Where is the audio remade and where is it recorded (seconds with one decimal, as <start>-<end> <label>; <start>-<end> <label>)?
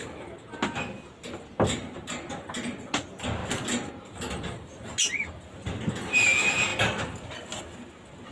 0.0-8.3 recorded